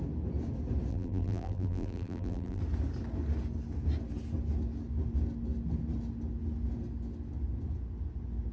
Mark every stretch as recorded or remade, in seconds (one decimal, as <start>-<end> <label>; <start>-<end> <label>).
0.0-0.9 recorded; 0.9-2.6 remade; 2.6-8.5 recorded